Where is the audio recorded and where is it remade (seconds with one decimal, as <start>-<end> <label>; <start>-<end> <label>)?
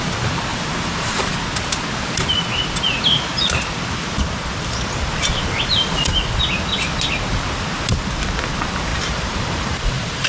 0.0-0.5 recorded; 0.5-1.2 remade; 1.2-8.9 recorded; 8.9-10.3 remade